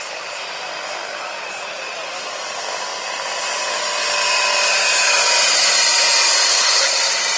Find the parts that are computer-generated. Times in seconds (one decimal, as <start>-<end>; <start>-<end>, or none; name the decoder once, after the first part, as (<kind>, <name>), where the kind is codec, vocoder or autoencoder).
6.5-7.0 (codec, HILCodec)